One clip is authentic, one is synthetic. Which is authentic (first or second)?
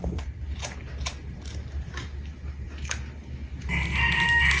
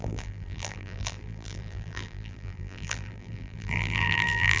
first